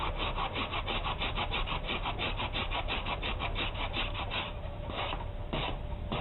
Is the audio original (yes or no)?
no